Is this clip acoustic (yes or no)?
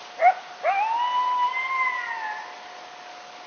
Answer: yes